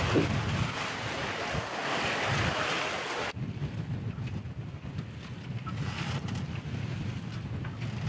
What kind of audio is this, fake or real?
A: real